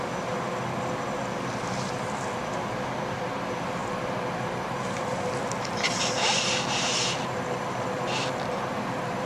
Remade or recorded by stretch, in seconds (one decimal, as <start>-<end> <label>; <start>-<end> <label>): 0.0-3.8 remade; 3.8-6.2 recorded; 6.2-9.3 remade